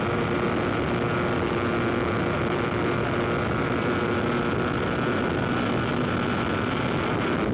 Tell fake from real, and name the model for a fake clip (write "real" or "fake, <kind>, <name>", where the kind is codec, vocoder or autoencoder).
real